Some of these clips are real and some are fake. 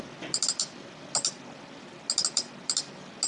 real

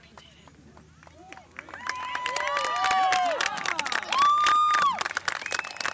real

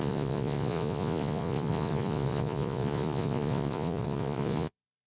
fake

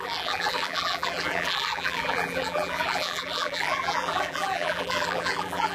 fake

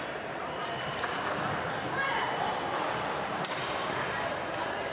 real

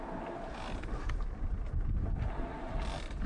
real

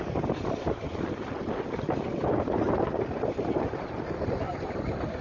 real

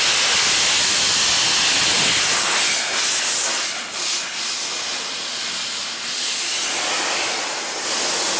real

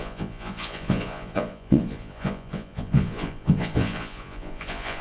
fake